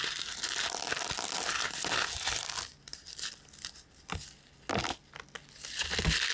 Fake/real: real